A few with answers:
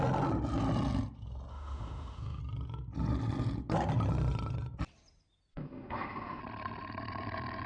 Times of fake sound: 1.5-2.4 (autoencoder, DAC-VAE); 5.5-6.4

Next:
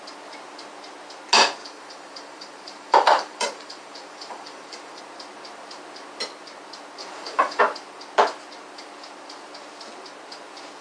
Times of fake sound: 1.6-5.0 (vocoder, BigVGAN v2); 7.0-7.6

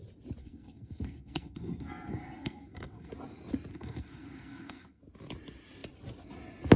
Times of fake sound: 0.4-3.1 (codec, SNAC); 3.7-5.0

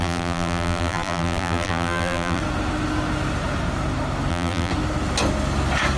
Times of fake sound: 0.0-2.4 (vocoder, BigVGAN v2); 4.3-4.7

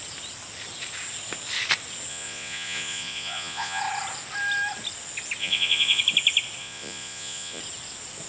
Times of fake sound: 2.1-3.8 (vocoder, Vocos); 5.4-6.0; 6.6-7.6

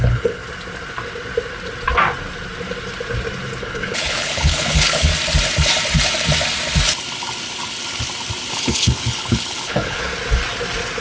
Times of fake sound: 0.0-0.4 (codec, HILCodec); 3.6-5.1; 8.5-10.1

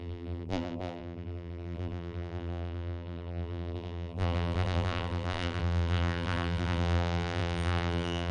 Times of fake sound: 0.0-8.3 (vocoder, BigVGAN v2)